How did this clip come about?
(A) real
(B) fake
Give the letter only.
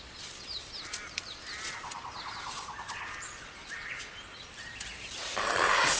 B